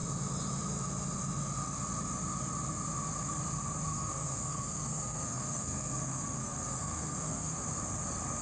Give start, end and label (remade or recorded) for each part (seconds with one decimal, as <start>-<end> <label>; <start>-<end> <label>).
0.0-3.9 recorded; 3.9-7.6 remade; 7.6-8.4 recorded